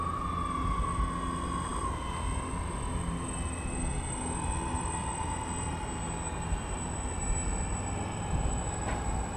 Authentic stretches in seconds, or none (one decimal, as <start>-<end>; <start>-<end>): 0.0-9.4